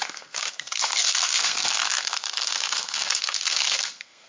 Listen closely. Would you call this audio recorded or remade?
remade